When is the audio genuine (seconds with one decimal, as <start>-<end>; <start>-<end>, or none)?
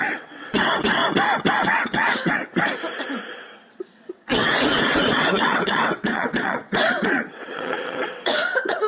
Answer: 1.0-1.5; 2.5-3.9